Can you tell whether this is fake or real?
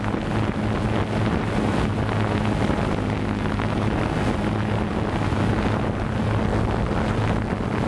real